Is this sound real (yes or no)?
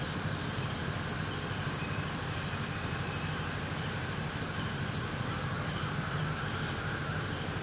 yes